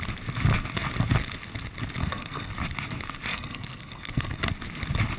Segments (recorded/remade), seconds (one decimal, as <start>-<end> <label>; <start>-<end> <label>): 0.0-2.0 recorded; 2.0-2.5 remade; 2.5-3.3 recorded; 3.3-4.4 remade; 4.4-5.2 recorded